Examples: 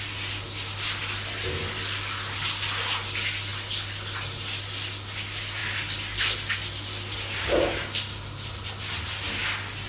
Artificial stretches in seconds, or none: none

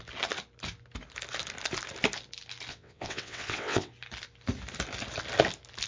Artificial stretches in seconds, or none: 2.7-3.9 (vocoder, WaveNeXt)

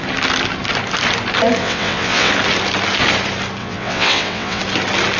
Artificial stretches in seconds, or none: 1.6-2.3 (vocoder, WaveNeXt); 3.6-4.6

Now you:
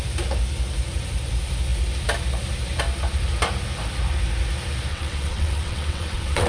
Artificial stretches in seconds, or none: 4.9-6.5 (vocoder, WaveNeXt)

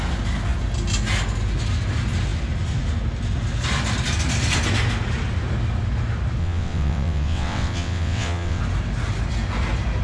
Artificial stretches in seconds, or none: 6.4-8.6 (vocoder, WaveNeXt)